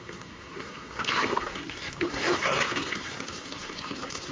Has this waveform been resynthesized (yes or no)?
yes